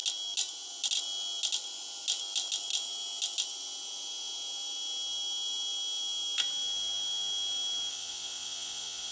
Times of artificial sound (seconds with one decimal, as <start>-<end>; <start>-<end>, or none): 7.9-9.1